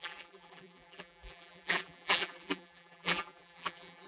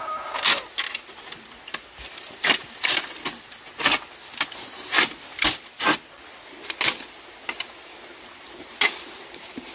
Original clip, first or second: second